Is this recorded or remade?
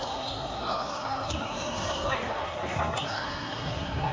remade